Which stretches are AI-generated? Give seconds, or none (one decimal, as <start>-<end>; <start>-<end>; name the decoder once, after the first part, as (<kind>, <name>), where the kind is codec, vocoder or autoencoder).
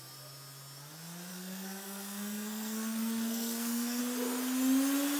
1.3-4.0 (codec, SNAC)